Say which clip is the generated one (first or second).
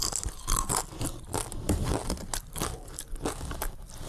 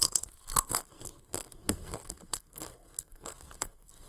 second